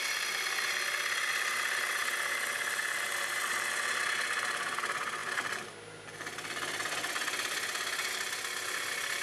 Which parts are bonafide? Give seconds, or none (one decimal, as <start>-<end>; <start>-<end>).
0.0-9.2